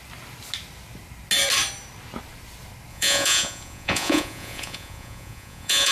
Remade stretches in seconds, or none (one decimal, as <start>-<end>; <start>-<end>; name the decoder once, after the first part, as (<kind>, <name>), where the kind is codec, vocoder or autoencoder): 2.9-5.9 (vocoder, Vocos)

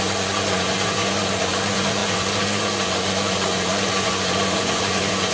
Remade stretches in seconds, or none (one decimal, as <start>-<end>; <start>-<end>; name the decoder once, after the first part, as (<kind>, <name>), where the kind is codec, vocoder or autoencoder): 0.0-5.3 (vocoder, Vocos)

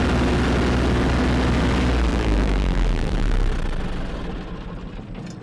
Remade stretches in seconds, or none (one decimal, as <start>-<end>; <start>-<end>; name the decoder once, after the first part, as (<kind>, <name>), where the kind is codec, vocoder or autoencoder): 2.1-3.5 (vocoder, BigVGAN v2)

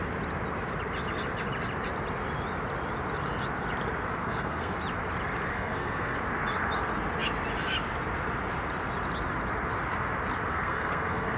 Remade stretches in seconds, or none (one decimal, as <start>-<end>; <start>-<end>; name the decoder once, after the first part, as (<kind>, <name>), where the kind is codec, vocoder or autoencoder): 4.2-4.7 (codec, SNAC); 5.5-6.2; 10.5-11.4

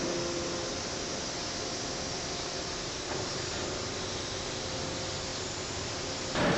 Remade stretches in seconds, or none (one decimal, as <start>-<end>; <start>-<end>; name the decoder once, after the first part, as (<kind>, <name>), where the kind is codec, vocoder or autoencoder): none